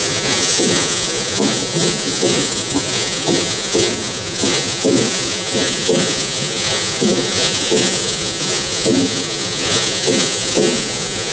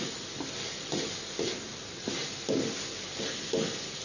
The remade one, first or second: first